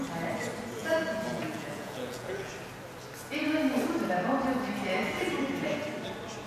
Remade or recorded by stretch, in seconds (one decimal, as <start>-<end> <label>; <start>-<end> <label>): 0.0-0.8 recorded; 0.8-2.5 remade; 2.5-6.5 recorded